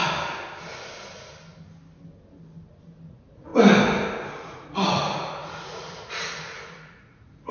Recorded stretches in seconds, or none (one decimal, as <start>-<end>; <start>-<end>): 0.0-3.1; 3.5-4.3